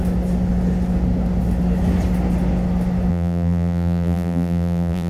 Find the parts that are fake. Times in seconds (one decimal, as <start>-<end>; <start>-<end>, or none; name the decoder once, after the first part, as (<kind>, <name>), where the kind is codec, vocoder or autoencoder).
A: 3.1-5.1 (vocoder, BigVGAN v2)